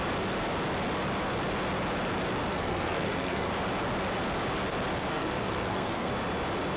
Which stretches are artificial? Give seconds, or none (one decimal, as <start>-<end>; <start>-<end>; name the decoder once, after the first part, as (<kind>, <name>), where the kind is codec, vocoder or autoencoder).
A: 2.5-3.5 (codec, SNAC); 5.1-6.1